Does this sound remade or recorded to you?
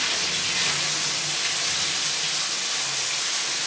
recorded